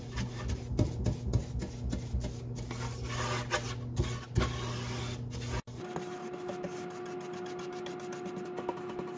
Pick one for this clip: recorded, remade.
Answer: recorded